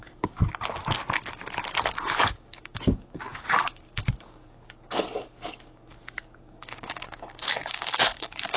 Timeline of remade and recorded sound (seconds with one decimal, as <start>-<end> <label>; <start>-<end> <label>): 0.0-0.4 remade; 0.4-1.8 recorded; 1.8-8.6 remade